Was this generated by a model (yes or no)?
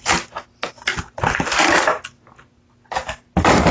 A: no